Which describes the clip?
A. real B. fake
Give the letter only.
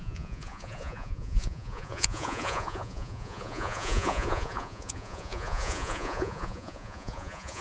B